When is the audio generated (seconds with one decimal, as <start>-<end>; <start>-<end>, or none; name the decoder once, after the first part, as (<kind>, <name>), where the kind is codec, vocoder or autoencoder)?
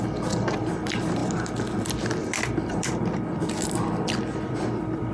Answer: 2.2-5.1 (vocoder, BigVGAN v2)